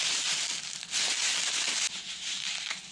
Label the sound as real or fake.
real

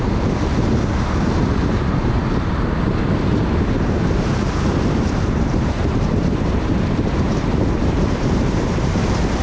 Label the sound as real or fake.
fake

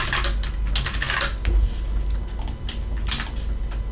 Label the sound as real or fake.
real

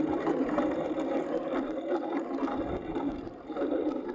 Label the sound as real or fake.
fake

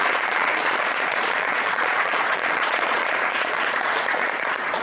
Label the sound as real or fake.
fake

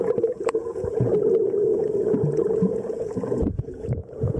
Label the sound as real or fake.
fake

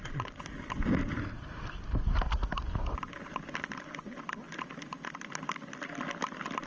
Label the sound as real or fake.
real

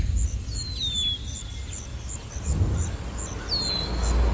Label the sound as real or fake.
real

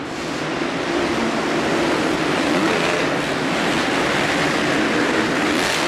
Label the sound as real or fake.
real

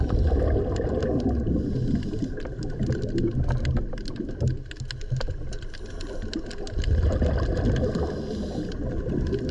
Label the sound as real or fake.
real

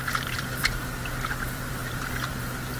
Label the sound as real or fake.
fake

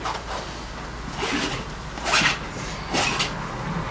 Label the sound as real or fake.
real